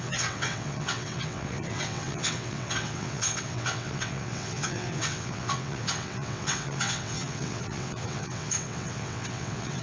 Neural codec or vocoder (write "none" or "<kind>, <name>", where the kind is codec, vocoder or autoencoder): vocoder, WaveNeXt